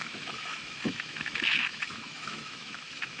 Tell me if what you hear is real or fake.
fake